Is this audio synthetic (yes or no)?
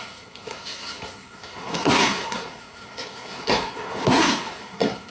yes